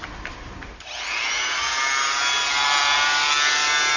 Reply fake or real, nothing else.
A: real